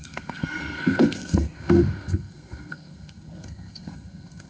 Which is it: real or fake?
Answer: fake